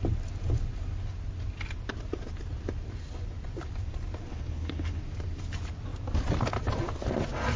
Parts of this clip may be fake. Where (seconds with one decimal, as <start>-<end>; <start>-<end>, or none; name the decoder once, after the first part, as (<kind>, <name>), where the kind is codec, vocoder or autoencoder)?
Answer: 4.3-5.0 (codec, HILCodec)